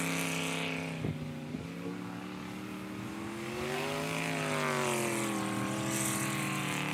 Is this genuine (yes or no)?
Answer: yes